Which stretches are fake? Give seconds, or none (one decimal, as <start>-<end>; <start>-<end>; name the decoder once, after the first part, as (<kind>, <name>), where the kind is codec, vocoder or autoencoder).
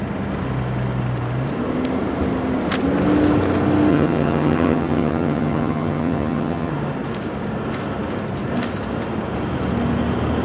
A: 3.9-6.7 (vocoder, HiFi-GAN)